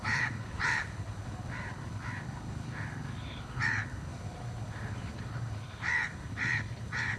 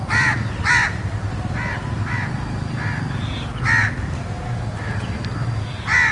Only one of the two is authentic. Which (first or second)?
second